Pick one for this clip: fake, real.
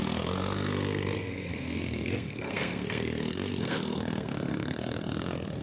fake